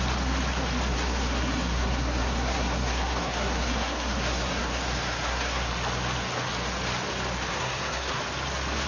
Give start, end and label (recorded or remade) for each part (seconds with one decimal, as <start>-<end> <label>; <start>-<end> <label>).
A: 0.0-0.9 recorded; 0.9-5.7 remade; 5.7-7.5 recorded; 7.5-8.2 remade; 8.2-8.9 recorded